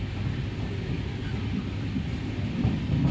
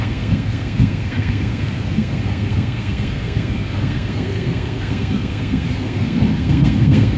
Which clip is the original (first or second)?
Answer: first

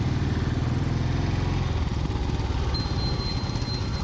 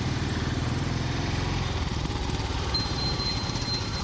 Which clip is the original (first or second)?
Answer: first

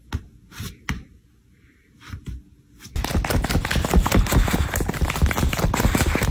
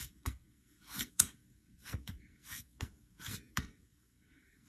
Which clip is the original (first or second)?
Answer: first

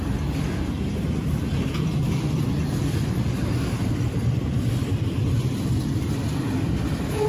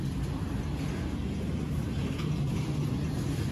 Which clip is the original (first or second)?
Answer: second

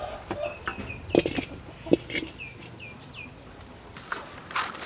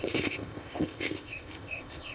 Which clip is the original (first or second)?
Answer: first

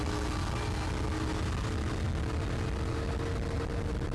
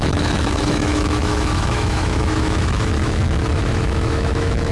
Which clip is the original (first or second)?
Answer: first